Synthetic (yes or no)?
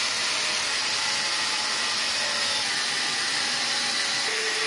no